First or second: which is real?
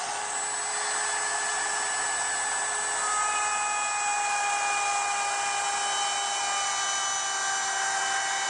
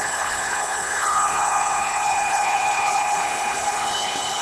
first